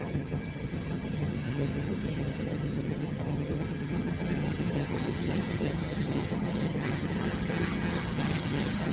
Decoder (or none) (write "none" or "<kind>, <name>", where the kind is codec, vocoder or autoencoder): vocoder, HiFi-GAN